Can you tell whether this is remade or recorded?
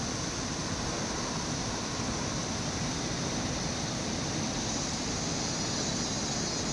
recorded